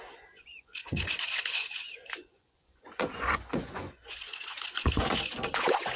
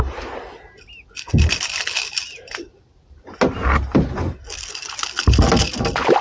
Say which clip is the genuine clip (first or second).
second